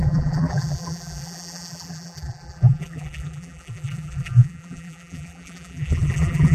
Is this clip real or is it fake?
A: fake